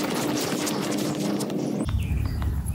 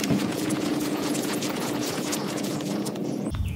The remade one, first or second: second